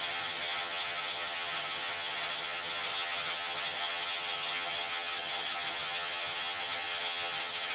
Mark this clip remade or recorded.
remade